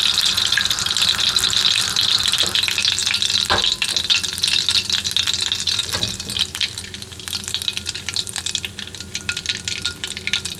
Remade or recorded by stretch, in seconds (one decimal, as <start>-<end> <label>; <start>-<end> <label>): 0.0-3.0 recorded; 3.0-4.1 remade; 4.1-5.8 recorded; 5.8-9.5 remade; 9.5-10.6 recorded